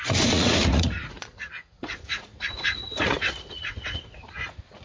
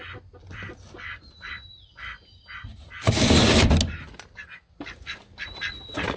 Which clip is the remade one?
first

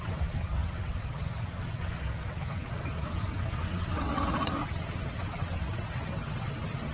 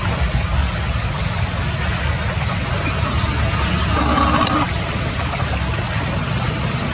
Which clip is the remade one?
first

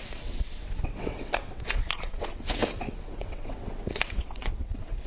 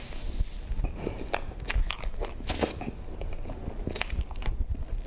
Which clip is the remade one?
first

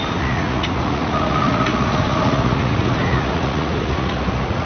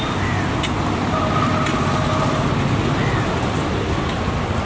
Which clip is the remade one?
first